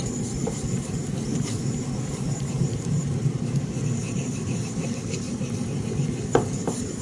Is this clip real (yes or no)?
no